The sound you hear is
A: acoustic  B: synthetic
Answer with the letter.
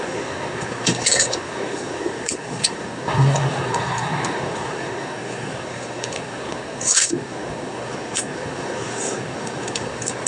B